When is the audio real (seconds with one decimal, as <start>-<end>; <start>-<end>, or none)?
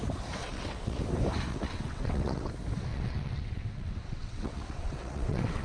0.0-0.4; 1.0-1.5; 2.5-2.9